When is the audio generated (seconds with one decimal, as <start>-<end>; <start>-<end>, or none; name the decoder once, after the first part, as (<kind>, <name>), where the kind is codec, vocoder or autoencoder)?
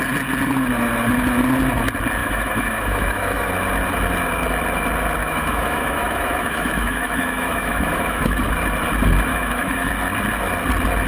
2.2-3.5 (autoencoder, DAC-VAE); 5.2-8.4; 9.3-9.9